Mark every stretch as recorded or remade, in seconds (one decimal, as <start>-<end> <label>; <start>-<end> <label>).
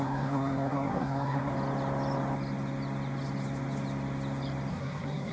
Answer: 0.0-1.5 remade; 1.5-4.7 recorded; 4.7-5.3 remade